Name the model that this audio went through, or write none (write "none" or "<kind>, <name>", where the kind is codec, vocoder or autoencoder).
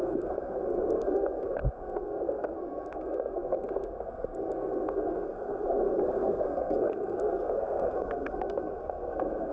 codec, SNAC